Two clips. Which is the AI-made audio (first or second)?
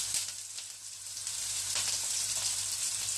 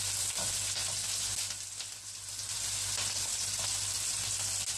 first